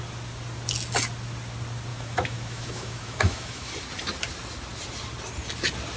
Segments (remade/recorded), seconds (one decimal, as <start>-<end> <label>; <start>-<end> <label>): 0.0-1.9 recorded; 1.9-3.7 remade; 3.7-6.0 recorded